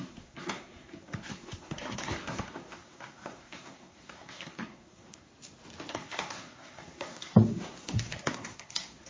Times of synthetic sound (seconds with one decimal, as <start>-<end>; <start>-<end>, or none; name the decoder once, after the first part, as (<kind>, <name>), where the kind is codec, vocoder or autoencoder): 0.0-5.3 (codec, SNAC); 5.9-9.1